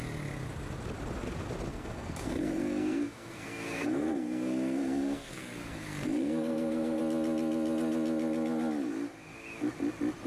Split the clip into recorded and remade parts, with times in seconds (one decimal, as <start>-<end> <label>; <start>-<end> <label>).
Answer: 0.0-1.7 recorded; 1.7-7.0 remade; 7.0-10.3 recorded